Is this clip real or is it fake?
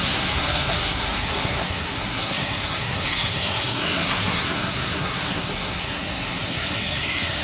fake